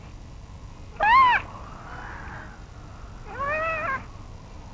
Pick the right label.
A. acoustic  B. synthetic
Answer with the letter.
A